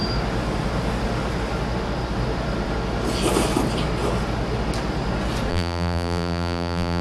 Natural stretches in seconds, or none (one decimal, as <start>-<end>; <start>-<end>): 0.0-5.5